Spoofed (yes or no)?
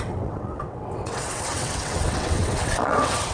yes